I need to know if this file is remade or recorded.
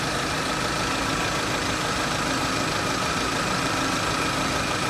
recorded